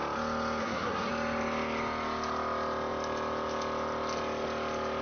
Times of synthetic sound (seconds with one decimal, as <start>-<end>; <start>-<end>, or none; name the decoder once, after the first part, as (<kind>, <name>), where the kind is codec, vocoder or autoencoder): 0.6-1.1 (codec, SNAC)

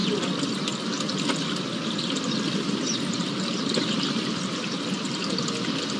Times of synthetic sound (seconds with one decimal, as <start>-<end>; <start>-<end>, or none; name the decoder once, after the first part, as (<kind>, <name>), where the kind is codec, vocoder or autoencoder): none

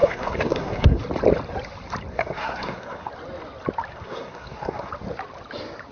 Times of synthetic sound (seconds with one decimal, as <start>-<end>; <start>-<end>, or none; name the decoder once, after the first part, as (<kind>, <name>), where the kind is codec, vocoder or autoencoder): 0.0-1.0 (codec, SNAC); 2.1-3.1; 3.9-4.9

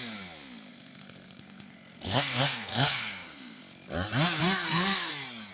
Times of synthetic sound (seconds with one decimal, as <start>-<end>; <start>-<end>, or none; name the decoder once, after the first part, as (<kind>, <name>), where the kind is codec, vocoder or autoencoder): 0.7-3.6 (codec, SNAC); 4.4-5.1

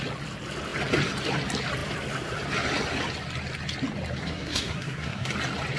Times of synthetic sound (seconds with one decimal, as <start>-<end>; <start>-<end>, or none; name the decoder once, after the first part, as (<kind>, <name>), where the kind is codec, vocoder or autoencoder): 4.2-5.3 (codec, SNAC)

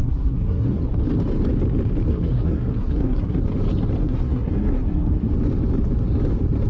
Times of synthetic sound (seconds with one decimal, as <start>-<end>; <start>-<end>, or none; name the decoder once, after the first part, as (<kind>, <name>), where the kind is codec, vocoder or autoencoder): 0.0-1.0 (codec, SNAC); 2.1-3.4; 4.0-5.3

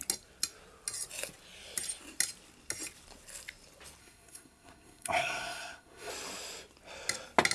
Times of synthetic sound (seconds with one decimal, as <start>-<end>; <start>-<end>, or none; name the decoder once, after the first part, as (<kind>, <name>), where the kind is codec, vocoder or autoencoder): 4.0-6.1 (codec, SNAC)